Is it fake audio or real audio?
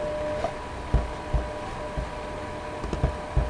real